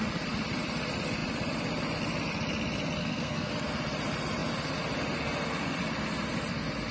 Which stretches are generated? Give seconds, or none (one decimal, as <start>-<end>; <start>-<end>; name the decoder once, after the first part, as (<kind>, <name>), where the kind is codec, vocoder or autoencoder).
3.0-3.5 (codec, SNAC)